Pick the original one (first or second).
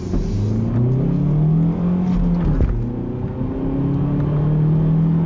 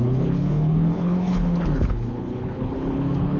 first